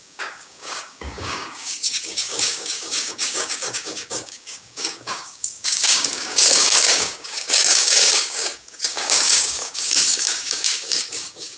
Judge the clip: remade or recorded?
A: remade